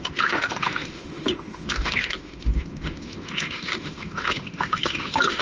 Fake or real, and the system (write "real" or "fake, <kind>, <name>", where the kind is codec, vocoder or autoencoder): fake, autoencoder, DAC-VAE